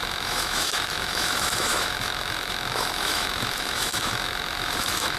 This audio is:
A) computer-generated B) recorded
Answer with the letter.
A